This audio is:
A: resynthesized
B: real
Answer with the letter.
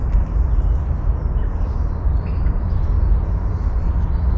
B